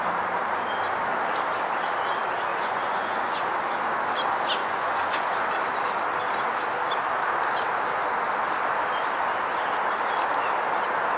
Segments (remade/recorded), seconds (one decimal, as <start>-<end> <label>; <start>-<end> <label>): 0.0-2.5 recorded; 2.5-3.5 remade; 3.5-4.6 recorded; 4.6-5.5 remade; 5.5-11.2 recorded